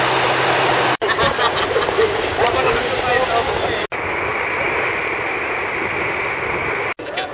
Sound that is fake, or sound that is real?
real